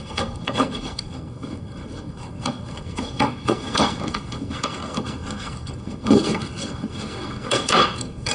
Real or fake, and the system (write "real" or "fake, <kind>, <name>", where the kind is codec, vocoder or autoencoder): fake, codec, SNAC